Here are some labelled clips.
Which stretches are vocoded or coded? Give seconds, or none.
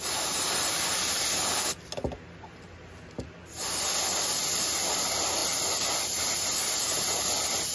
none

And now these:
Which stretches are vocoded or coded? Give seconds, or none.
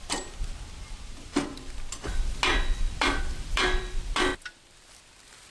0.0-1.3 (vocoder, BigVGAN v2); 3.2-4.3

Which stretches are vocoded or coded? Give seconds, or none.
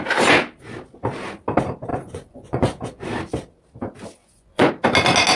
1.9-3.1 (vocoder, Vocos); 4.2-4.7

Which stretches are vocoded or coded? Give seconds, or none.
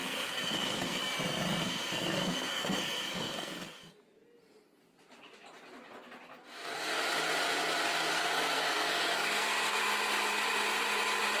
0.0-1.0 (codec, SNAC); 1.6-3.8; 6.3-7.0; 8.1-9.8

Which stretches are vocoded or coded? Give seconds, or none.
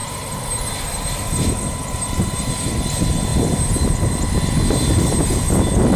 0.0-2.5 (vocoder, BigVGAN v2)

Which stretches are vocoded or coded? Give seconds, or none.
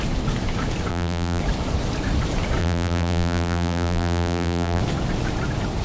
0.9-1.4 (vocoder, BigVGAN v2); 2.6-4.8